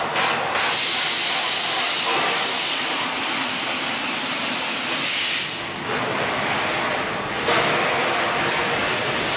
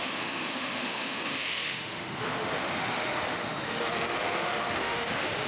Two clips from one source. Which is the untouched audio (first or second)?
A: first